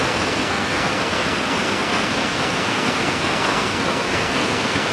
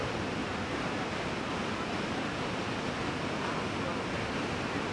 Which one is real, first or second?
second